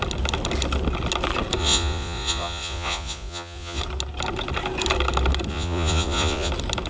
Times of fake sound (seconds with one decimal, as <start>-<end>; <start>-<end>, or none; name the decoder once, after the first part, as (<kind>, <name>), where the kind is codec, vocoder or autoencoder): 1.6-3.8 (vocoder, Vocos); 5.5-6.5